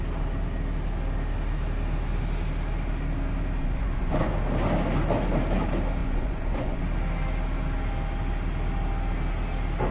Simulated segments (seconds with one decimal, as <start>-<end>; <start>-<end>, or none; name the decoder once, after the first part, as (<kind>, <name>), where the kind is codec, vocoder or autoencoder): 3.6-4.3 (vocoder, Vocos); 6.0-6.8